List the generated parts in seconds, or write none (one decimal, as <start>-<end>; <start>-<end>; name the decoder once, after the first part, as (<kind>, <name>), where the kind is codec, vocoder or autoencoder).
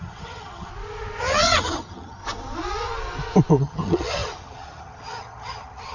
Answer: 0.0-0.7 (vocoder, HiFi-GAN); 1.2-2.2; 3.6-5.9